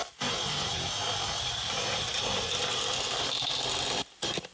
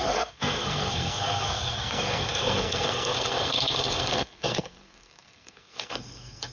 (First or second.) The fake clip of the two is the second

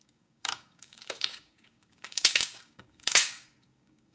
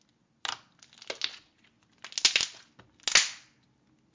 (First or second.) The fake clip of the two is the first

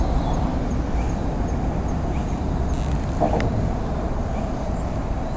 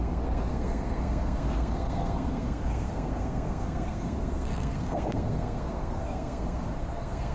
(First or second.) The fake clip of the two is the second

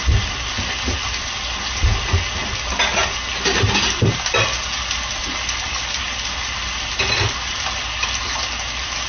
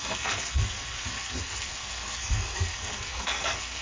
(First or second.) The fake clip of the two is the second